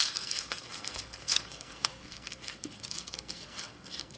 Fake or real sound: fake